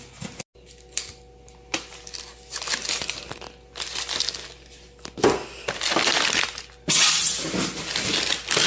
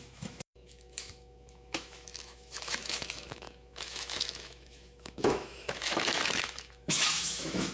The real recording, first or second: first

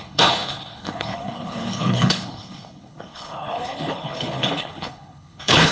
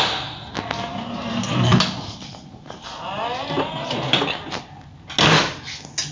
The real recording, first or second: second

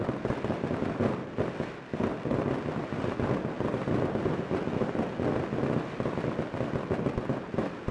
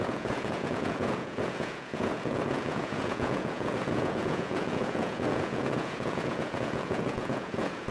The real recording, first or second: first